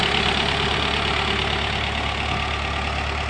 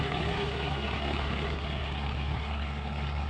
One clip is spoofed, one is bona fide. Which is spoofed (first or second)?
second